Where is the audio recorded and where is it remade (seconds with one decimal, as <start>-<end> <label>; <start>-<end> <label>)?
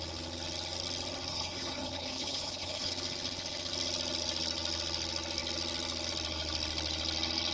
0.0-1.3 recorded; 1.3-2.9 remade; 2.9-7.5 recorded